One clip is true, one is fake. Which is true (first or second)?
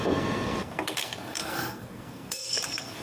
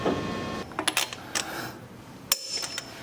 second